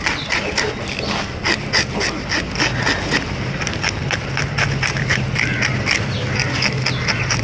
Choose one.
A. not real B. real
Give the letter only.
B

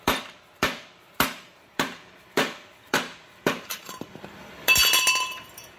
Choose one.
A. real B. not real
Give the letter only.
B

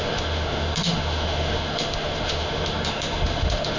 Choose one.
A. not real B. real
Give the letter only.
A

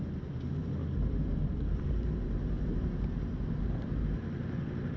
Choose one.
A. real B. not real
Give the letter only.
A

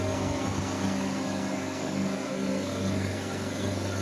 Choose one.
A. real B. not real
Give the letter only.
B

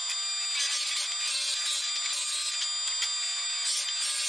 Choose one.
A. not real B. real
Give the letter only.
B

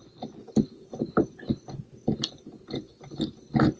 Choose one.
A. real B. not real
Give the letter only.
A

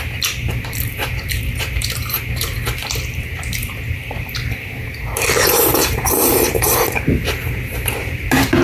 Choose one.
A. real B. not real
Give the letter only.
B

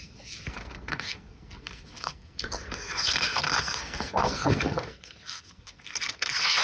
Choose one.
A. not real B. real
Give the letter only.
A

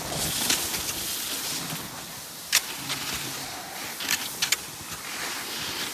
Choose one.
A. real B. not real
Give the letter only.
A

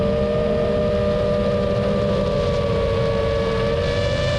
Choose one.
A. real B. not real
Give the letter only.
A